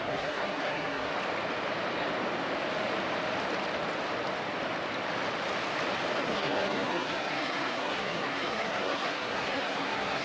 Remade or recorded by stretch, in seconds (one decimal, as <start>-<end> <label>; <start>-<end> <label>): 0.0-1.1 remade; 1.1-6.2 recorded; 6.2-10.2 remade